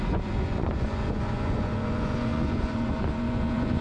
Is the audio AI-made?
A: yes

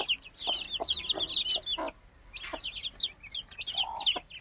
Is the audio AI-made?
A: no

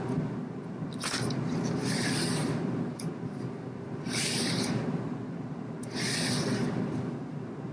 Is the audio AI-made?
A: no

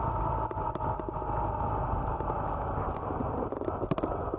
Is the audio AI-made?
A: no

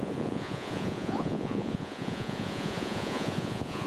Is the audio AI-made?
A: yes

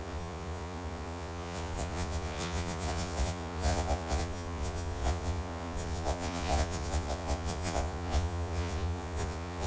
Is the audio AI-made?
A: yes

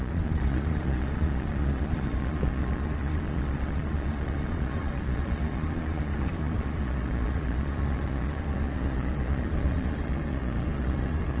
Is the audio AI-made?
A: yes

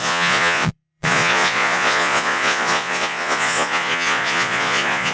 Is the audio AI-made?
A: yes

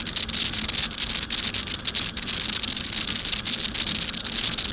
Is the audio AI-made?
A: no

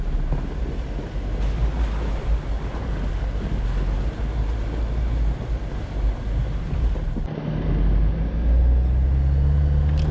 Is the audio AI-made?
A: no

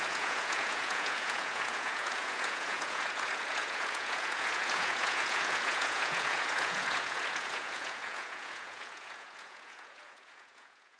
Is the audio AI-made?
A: yes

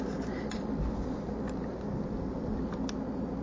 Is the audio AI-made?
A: no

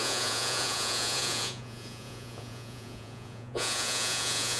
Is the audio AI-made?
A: yes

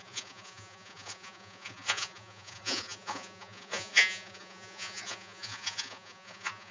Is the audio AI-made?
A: yes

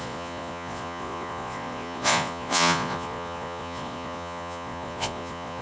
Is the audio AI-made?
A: yes